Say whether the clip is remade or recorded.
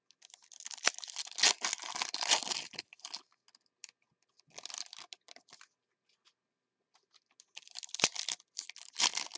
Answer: recorded